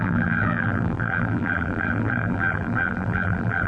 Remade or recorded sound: remade